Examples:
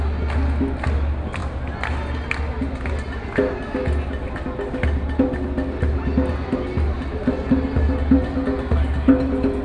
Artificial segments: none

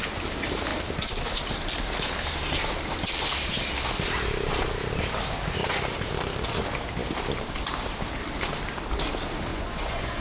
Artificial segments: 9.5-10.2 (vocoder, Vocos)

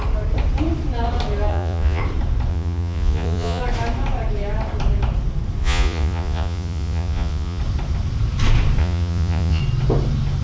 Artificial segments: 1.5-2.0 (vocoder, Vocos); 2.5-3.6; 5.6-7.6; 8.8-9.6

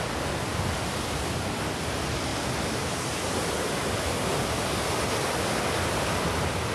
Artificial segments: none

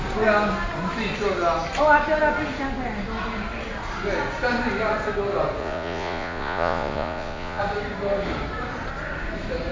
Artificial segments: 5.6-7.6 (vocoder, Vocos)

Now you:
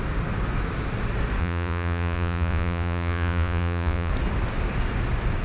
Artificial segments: 1.4-4.1 (vocoder, Vocos)

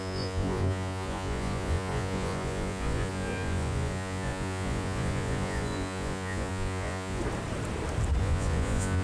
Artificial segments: 0.0-7.2 (vocoder, Vocos); 8.2-9.0